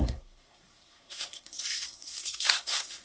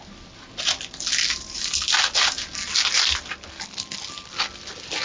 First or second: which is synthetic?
first